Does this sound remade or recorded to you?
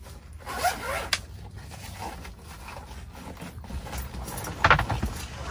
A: recorded